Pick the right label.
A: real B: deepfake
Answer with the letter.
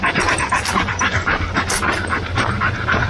A